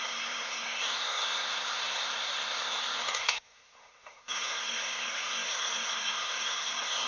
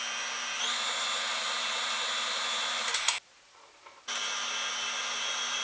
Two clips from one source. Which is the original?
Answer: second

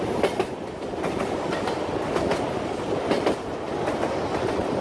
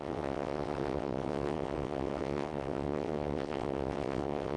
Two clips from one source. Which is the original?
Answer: first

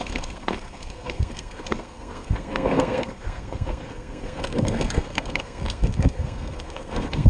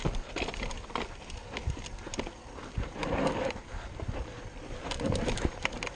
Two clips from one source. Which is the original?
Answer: second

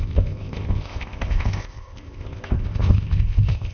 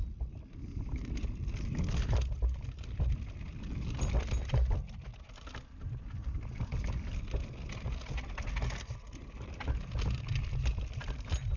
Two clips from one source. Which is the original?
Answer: second